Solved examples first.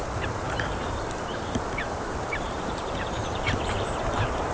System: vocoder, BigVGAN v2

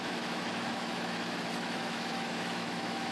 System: autoencoder, DAC-VAE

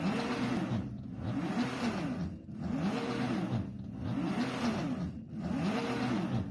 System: none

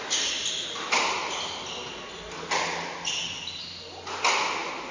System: none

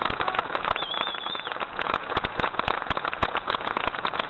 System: vocoder, Vocos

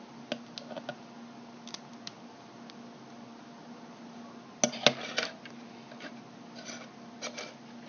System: none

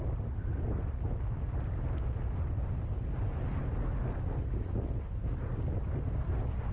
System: none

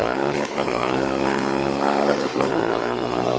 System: codec, SNAC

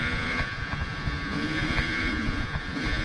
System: vocoder, Vocos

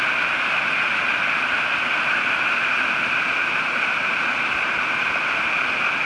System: none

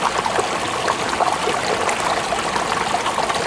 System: none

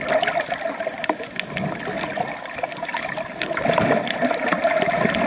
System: none